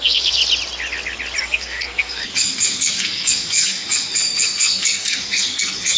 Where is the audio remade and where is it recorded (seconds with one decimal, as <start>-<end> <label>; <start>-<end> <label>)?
0.0-0.4 remade; 0.4-1.4 recorded; 1.4-6.0 remade